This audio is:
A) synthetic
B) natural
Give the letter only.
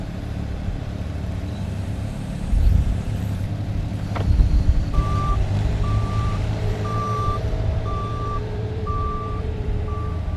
A